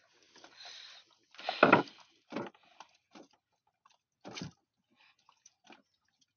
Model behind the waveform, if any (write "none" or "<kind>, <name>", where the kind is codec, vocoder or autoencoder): none